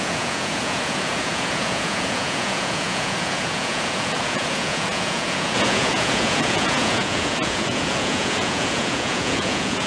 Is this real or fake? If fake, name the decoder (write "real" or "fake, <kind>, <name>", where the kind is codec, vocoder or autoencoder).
fake, vocoder, Vocos